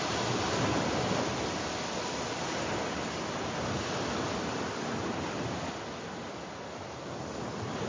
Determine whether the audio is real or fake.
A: real